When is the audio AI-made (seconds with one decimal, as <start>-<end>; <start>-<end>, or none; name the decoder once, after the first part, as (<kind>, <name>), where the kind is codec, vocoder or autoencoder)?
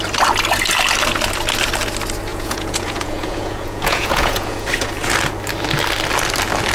2.3-4.7 (vocoder, Vocos)